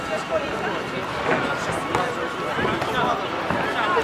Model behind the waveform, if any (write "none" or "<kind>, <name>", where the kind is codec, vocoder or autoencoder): none